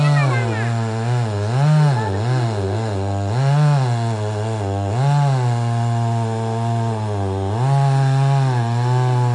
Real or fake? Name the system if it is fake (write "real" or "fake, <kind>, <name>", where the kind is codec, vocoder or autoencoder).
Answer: real